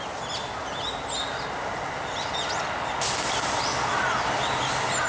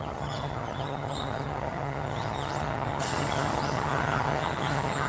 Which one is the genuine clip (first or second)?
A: first